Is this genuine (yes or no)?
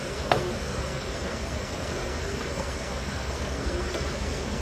no